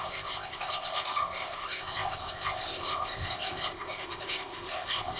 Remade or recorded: remade